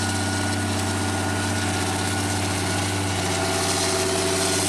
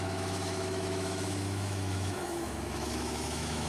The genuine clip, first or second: first